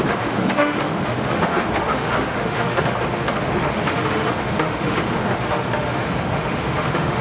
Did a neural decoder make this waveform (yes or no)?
yes